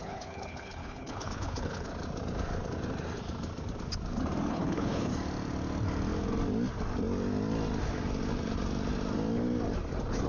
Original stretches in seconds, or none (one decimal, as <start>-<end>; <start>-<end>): 1.9-4.5; 5.1-10.3